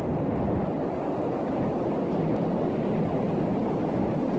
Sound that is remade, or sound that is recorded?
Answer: recorded